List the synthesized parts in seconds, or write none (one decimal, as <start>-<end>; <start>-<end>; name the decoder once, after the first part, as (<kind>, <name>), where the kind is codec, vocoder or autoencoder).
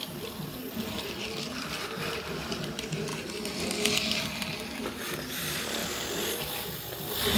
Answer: none